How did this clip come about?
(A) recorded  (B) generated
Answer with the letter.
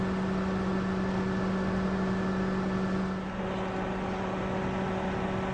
A